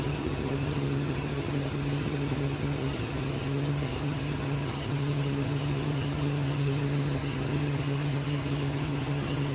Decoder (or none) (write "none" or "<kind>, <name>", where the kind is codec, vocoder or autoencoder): vocoder, HiFi-GAN